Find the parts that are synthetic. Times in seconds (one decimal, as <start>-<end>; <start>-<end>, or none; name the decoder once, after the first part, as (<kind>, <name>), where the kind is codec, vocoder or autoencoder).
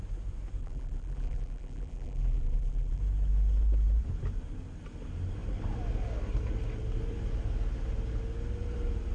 0.6-3.0 (vocoder, BigVGAN v2)